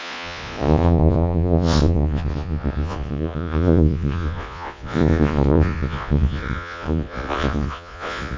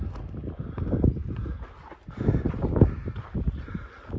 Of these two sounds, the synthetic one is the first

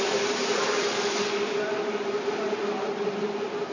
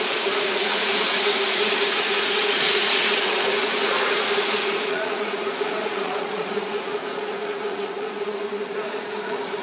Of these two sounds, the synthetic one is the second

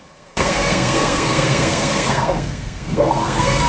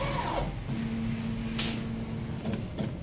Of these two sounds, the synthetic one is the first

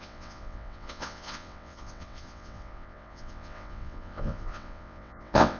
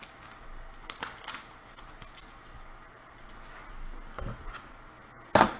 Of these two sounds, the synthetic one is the first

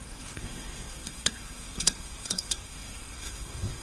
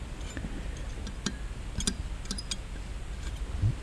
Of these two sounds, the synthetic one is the first